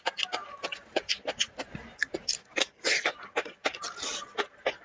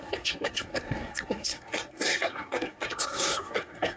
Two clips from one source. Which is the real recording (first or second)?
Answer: first